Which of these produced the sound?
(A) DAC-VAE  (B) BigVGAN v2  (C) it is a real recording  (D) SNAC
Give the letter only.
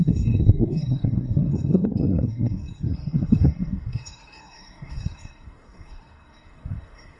D